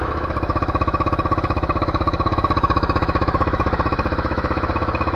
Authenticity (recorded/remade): remade